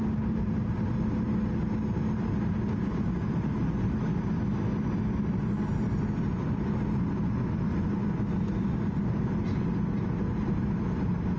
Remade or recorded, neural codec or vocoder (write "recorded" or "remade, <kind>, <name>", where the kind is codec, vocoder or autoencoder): recorded